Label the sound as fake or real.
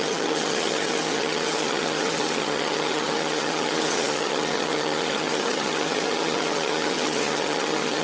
fake